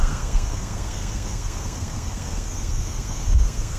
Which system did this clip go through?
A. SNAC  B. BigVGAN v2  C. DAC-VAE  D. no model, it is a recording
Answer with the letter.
A